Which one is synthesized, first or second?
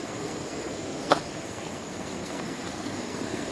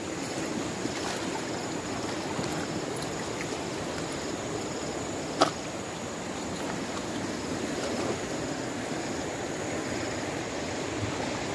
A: first